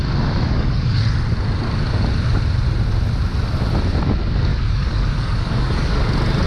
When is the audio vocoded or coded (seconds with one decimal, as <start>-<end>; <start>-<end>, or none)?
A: 0.5-1.0; 4.5-6.0